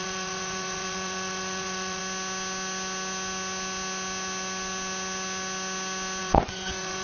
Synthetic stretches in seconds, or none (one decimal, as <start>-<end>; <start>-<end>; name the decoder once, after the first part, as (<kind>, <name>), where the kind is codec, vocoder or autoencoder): 0.0-2.0 (vocoder, Vocos); 6.2-7.0